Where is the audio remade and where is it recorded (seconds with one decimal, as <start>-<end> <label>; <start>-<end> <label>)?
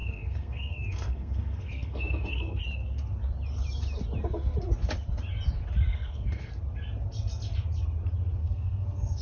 0.0-2.6 remade; 2.6-5.9 recorded; 5.9-6.5 remade; 6.5-8.4 recorded; 8.4-9.2 remade